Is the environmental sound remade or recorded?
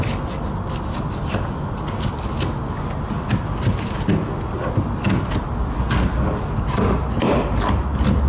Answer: recorded